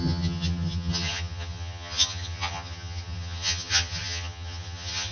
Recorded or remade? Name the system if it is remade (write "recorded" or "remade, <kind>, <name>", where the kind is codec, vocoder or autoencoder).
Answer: remade, vocoder, HiFi-GAN